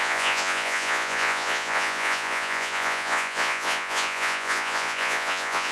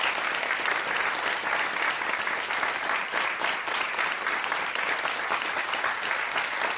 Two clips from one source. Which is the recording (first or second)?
second